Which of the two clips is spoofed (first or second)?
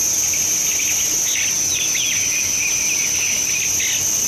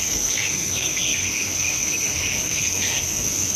second